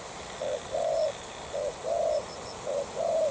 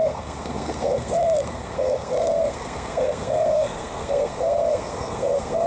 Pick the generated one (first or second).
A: second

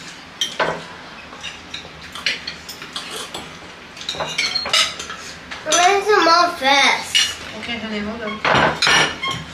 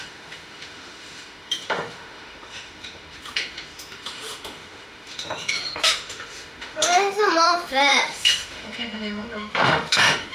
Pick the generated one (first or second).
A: second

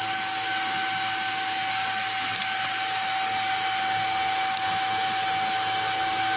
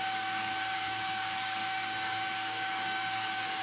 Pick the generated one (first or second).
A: second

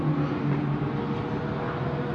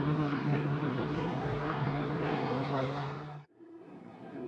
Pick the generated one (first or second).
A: second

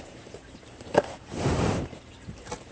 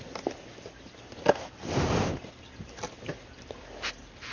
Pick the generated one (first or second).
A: first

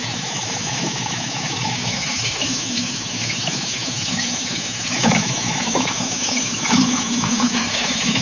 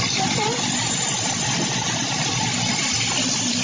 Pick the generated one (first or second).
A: first